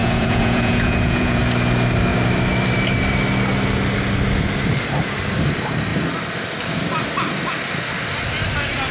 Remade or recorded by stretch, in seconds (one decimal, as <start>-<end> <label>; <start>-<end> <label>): 0.0-1.4 remade; 1.4-8.9 recorded